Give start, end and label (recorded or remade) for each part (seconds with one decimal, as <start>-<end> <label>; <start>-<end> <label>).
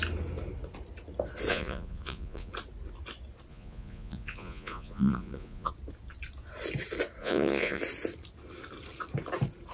0.0-1.5 recorded; 1.5-2.5 remade; 2.5-3.5 recorded; 3.5-5.7 remade; 5.7-7.2 recorded; 7.2-7.8 remade; 7.8-9.7 recorded